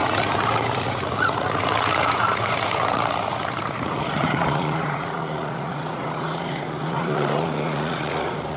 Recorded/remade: remade